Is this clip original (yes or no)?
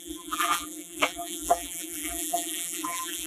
no